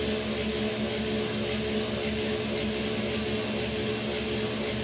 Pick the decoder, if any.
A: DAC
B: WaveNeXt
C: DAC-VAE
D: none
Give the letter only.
D